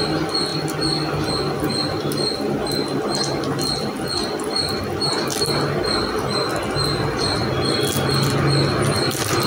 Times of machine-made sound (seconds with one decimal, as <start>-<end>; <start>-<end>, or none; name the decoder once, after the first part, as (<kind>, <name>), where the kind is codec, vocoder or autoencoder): none